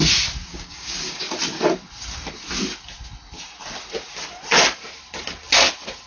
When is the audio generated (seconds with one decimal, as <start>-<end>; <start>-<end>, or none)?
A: 0.5-1.3